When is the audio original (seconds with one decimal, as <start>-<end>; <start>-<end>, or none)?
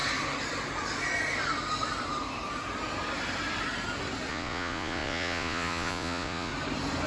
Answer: 0.0-4.3; 6.5-7.1